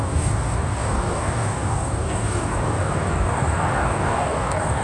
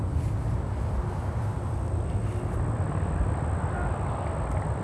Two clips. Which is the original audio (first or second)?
second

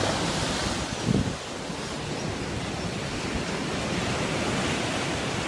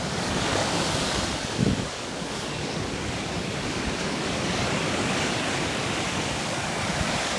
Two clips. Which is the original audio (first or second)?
first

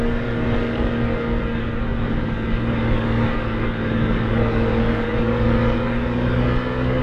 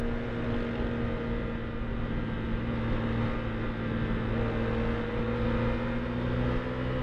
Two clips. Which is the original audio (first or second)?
second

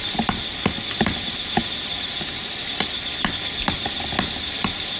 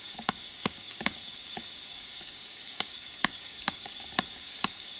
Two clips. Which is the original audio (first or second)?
first